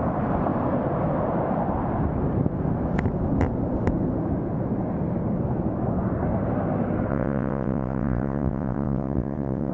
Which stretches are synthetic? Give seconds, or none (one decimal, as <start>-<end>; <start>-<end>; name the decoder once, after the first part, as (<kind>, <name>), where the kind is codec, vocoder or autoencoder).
7.1-9.7 (vocoder, WaveNeXt)

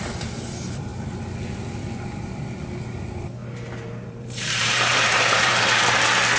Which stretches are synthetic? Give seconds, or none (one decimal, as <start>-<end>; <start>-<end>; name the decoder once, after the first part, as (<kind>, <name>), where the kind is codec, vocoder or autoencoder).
3.4-5.9 (vocoder, BigVGAN v2)

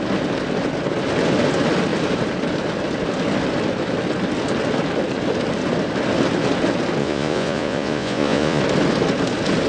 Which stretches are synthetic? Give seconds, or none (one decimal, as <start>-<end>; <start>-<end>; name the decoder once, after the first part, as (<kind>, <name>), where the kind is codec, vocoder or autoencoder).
7.0-8.6 (vocoder, Vocos)

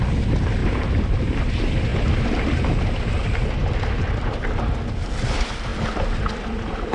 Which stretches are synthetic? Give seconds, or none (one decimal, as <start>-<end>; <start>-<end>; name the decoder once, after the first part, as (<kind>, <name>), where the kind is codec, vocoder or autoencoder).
0.6-1.5 (vocoder, BigVGAN v2); 1.9-2.6

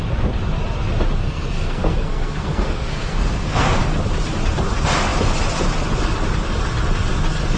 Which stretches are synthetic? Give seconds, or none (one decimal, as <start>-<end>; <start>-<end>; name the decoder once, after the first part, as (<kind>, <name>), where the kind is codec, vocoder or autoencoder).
1.2-3.8 (codec, SNAC)

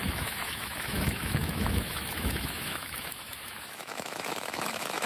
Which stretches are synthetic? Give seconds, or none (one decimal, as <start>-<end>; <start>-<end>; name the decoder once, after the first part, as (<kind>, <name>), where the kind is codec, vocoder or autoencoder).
0.0-5.1 (autoencoder, DAC-VAE)